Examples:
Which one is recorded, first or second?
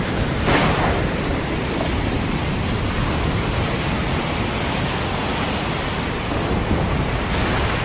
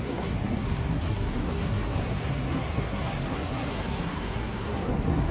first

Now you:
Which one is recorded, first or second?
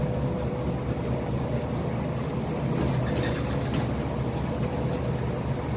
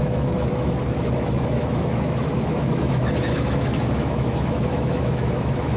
first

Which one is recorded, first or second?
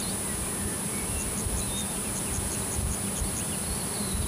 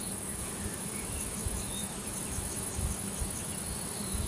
first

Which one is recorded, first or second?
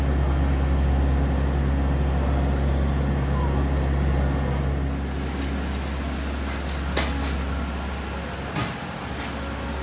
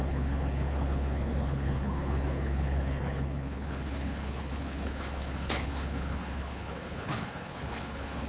first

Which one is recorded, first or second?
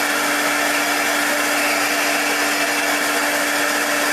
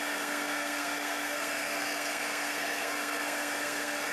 first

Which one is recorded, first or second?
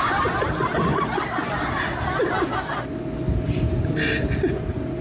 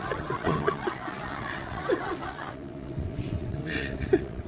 first